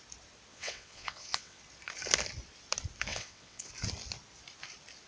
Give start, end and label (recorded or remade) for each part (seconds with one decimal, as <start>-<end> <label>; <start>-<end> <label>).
0.0-0.5 recorded; 0.5-1.6 remade; 1.6-3.1 recorded; 3.1-3.7 remade; 3.7-5.1 recorded